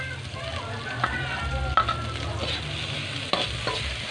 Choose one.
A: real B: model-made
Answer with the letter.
A